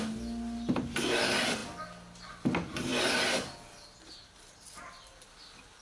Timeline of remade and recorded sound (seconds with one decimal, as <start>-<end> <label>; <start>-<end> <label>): 0.0-5.8 recorded